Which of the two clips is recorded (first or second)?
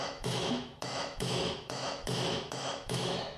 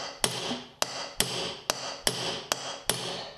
second